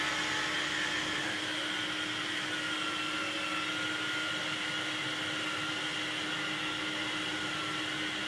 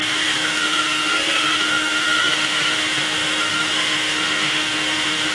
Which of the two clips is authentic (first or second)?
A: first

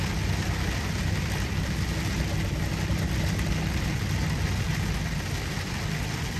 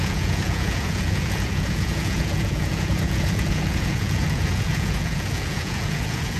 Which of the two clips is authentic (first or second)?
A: first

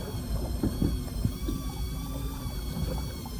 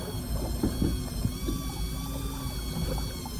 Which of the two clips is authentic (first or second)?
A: second